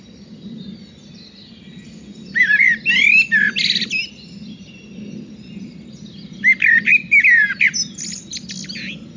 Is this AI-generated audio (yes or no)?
no